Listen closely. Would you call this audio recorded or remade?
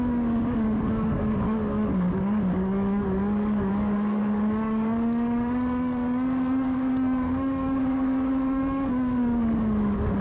remade